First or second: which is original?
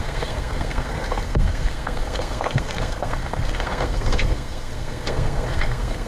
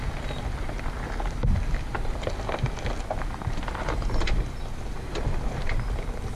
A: second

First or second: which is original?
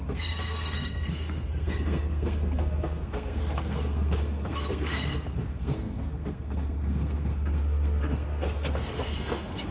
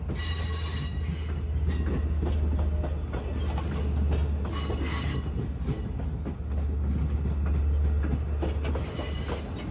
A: second